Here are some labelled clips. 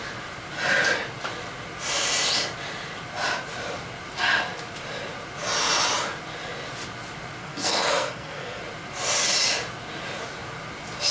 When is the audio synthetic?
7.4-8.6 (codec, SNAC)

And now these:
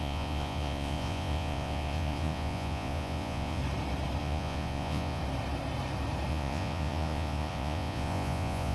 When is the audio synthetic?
0.0-3.6 (vocoder, Vocos); 4.2-5.2; 6.3-8.7